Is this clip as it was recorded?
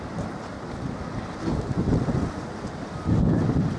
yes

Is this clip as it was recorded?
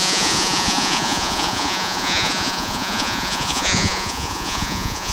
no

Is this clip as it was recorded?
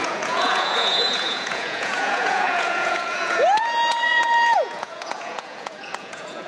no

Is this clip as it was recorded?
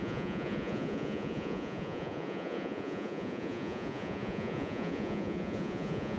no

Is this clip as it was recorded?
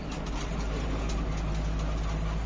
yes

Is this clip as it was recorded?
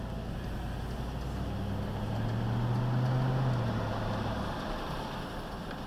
yes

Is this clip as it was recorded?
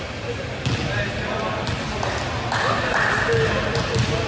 yes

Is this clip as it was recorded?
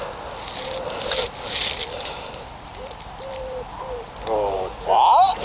yes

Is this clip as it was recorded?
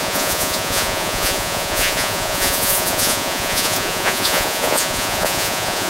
no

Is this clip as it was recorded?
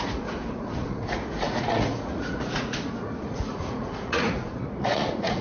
no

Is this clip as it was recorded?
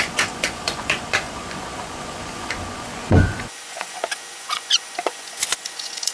no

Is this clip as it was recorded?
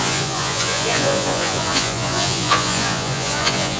no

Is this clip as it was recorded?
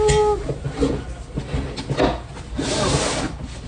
yes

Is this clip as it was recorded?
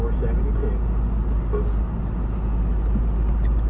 yes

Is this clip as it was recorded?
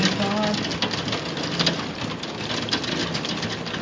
yes